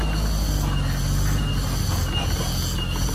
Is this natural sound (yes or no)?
yes